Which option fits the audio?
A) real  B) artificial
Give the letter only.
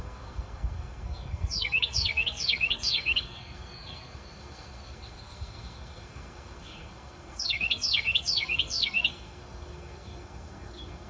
B